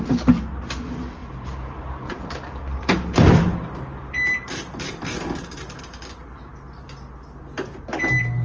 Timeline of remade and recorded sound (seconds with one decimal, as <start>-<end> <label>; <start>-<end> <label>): 0.0-1.2 recorded; 1.2-5.8 remade; 5.8-8.4 recorded